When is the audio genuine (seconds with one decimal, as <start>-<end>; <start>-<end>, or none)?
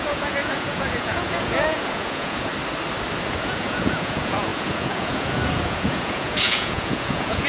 2.5-3.3